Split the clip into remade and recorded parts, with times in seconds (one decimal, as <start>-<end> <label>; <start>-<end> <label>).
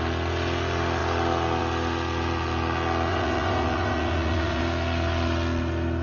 0.0-3.1 recorded; 3.1-4.6 remade; 4.6-6.0 recorded